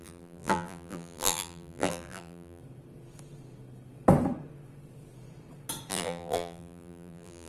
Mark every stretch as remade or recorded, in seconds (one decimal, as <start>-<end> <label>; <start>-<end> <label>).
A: 0.0-2.6 remade; 2.6-5.9 recorded; 5.9-7.5 remade